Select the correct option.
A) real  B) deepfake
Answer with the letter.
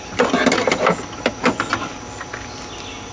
A